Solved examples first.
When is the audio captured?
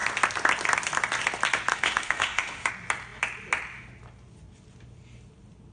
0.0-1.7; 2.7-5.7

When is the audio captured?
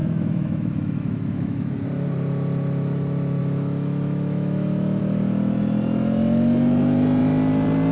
1.7-3.4; 5.0-7.9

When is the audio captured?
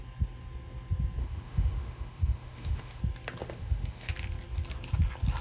0.0-1.2; 3.0-3.4; 4.1-5.4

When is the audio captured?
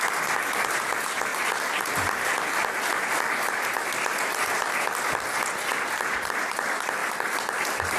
0.0-8.0